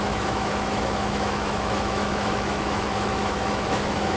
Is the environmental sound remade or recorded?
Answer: remade